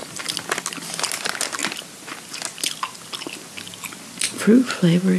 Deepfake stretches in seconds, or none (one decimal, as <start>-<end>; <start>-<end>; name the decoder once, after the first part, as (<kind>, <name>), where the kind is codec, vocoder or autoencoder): none